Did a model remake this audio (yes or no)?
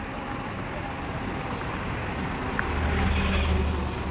no